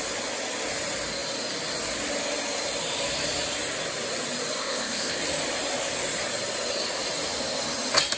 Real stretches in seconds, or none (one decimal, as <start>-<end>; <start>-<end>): 0.0-4.6; 5.2-8.2